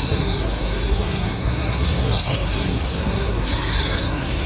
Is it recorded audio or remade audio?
remade